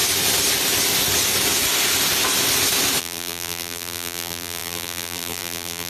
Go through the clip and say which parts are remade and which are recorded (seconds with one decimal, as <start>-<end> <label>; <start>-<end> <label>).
0.0-3.0 recorded; 3.0-5.9 remade